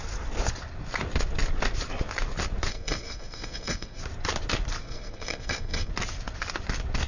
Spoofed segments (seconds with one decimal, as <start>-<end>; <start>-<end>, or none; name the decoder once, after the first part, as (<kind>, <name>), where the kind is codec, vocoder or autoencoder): 2.7-4.0 (codec, SNAC); 4.8-5.9